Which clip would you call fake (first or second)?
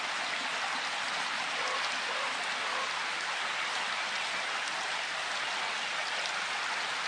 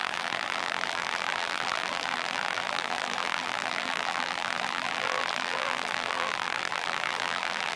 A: second